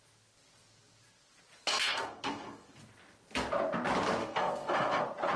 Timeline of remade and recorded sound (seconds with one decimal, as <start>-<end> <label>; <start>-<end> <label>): 0.0-1.7 recorded; 1.7-2.7 remade; 2.7-4.2 recorded; 4.2-5.0 remade; 5.0-5.4 recorded